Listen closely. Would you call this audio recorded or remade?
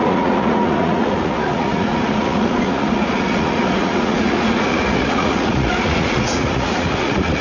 remade